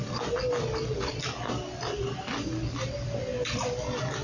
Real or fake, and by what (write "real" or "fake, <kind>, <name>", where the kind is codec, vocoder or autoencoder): real